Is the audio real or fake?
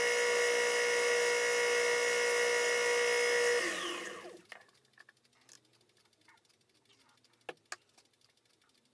real